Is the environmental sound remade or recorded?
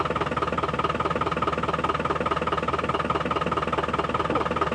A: recorded